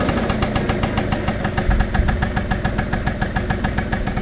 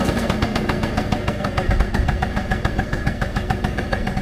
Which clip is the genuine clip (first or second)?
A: first